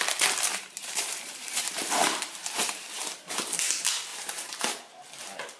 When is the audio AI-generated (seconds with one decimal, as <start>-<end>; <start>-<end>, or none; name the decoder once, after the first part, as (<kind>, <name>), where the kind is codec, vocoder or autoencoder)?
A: 0.5-3.4 (vocoder, BigVGAN v2); 4.1-4.9